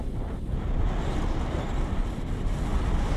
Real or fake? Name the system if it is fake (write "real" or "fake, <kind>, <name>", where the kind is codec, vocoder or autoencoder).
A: real